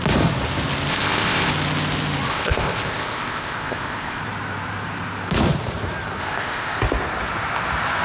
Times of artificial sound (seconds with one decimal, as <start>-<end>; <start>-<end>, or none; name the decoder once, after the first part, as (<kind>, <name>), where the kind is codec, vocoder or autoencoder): 0.9-1.5 (codec, ZipCodec); 2.3-4.2; 6.2-6.8